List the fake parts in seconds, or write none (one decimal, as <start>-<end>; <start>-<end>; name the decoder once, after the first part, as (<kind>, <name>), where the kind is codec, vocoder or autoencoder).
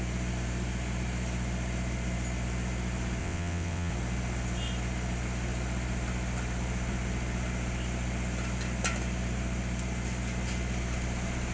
3.2-3.9 (vocoder, WaveNeXt)